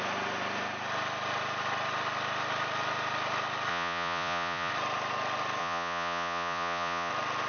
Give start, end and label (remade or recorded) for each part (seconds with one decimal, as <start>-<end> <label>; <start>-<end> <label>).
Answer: 0.0-3.7 recorded; 3.7-4.7 remade; 4.7-5.6 recorded; 5.6-7.1 remade; 7.1-7.5 recorded